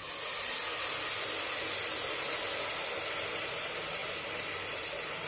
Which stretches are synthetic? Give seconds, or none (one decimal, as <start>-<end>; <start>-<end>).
2.9-5.3